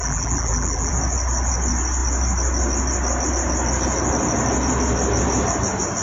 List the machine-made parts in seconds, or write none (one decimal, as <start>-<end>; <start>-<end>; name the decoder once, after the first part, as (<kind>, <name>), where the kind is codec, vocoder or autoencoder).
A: 0.0-0.9 (vocoder, BigVGAN v2)